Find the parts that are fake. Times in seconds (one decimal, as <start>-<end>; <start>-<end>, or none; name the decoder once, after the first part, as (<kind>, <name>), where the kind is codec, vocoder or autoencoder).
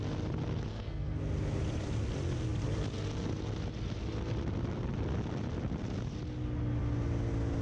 0.7-1.2 (codec, SNAC)